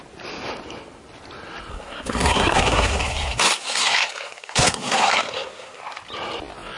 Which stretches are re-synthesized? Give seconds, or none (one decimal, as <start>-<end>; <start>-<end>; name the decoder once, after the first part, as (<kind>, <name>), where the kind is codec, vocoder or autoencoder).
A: 1.7-5.8 (codec, SNAC)